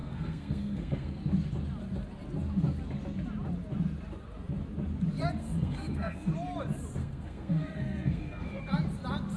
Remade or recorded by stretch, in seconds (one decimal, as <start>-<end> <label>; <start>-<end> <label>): 0.0-1.2 remade; 1.2-5.4 recorded; 5.4-6.3 remade; 6.3-7.0 recorded; 7.0-8.6 remade; 8.6-9.4 recorded